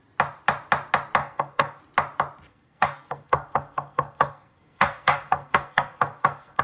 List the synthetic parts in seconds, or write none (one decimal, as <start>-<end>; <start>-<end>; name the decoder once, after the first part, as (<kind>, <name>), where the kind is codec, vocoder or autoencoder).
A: 1.2-1.8 (codec, SNAC); 2.5-6.6